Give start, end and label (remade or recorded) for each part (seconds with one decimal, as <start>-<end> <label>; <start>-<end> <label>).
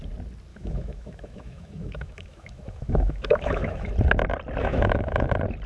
0.0-0.5 recorded; 0.5-3.9 remade; 3.9-4.6 recorded; 4.6-5.3 remade; 5.3-5.7 recorded